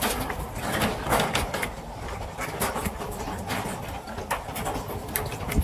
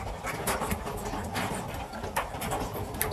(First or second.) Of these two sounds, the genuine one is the second